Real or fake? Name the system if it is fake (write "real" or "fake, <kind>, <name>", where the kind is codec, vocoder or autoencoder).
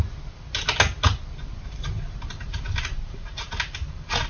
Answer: real